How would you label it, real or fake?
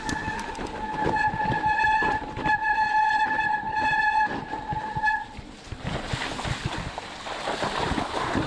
real